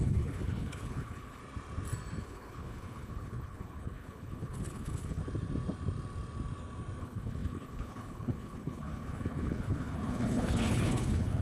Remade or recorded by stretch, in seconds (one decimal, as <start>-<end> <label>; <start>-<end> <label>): 0.0-1.4 remade; 1.4-2.2 recorded; 2.2-5.2 remade; 5.2-7.0 recorded; 7.0-11.4 remade